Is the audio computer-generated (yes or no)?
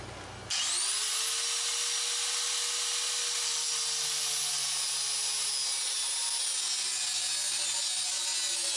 no